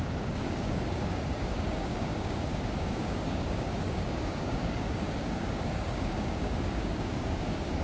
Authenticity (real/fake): fake